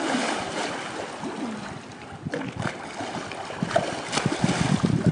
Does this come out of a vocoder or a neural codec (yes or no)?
no